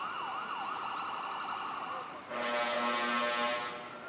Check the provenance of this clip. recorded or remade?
recorded